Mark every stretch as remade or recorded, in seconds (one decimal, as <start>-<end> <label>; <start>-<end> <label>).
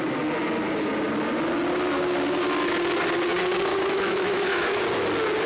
0.0-3.7 recorded; 3.7-4.8 remade; 4.8-5.5 recorded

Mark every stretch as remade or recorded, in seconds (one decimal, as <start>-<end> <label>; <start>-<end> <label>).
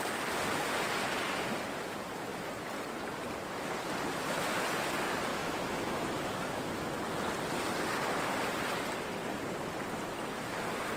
0.0-5.3 recorded; 5.3-7.0 remade; 7.0-11.0 recorded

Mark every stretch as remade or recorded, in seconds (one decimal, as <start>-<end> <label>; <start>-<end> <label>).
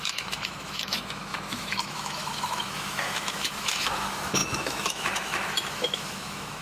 0.0-6.6 remade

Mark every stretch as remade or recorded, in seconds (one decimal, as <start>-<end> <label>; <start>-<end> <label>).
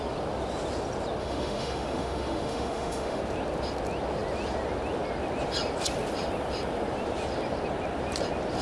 0.0-1.2 recorded; 1.2-3.2 remade; 3.2-8.6 recorded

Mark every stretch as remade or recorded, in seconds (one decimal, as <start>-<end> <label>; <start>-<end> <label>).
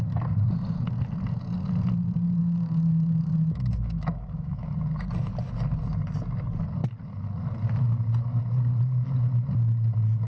0.0-2.4 recorded; 2.4-4.7 remade; 4.7-10.3 recorded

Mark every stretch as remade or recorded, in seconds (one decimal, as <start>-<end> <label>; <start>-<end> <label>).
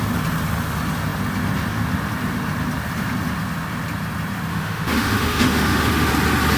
0.0-4.5 recorded; 4.5-6.1 remade; 6.1-6.6 recorded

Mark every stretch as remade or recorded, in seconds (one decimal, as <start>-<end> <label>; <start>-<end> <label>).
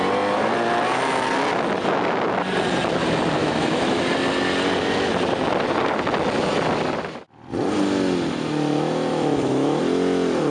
0.0-3.4 recorded; 3.4-4.0 remade; 4.0-9.1 recorded; 9.1-9.8 remade; 9.8-10.5 recorded